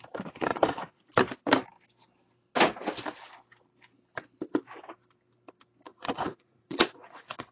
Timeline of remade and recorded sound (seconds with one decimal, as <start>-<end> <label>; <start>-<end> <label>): 0.0-0.5 recorded; 0.5-1.1 remade; 1.1-5.9 recorded; 5.9-7.5 remade